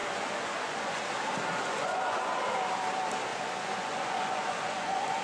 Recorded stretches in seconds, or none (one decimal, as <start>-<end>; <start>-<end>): 1.0-1.5; 2.4-3.3